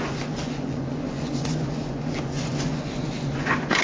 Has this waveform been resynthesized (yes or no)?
yes